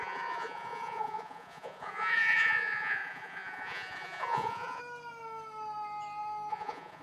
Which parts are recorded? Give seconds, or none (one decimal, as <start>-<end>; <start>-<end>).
4.8-6.5